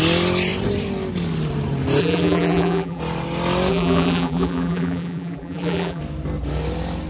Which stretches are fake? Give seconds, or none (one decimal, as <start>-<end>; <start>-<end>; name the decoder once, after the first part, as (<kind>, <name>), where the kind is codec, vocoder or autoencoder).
2.0-3.0 (vocoder, BigVGAN v2); 3.7-6.0